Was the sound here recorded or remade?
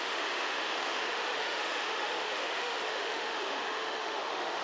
remade